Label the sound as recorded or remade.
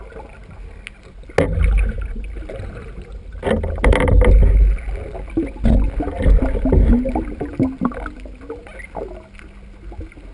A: recorded